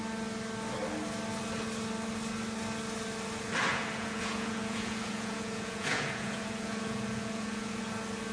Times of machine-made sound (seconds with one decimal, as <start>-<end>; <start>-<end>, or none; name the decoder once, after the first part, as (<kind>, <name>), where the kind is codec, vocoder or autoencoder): 3.7-7.8 (vocoder, Vocos)